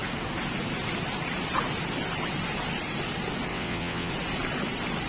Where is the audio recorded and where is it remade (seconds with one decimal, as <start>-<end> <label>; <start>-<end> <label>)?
0.0-3.5 recorded; 3.5-4.1 remade; 4.1-5.1 recorded